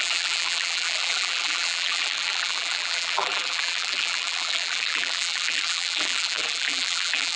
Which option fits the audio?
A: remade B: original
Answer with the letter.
A